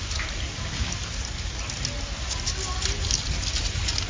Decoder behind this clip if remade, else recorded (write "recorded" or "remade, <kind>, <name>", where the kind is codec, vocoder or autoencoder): recorded